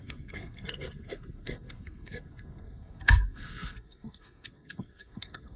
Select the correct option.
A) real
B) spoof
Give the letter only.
B